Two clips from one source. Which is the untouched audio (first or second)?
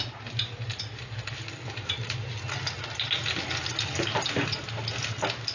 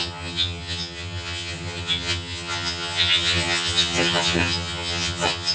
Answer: first